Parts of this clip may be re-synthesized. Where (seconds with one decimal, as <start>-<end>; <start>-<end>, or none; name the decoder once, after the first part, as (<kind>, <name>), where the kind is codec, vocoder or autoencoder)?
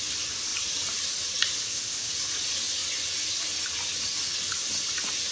1.6-2.1 (codec, ZipCodec)